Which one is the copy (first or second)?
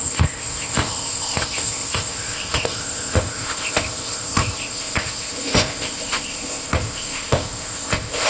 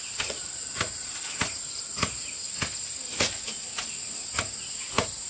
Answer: first